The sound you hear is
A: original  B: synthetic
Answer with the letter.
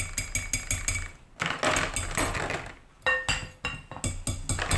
A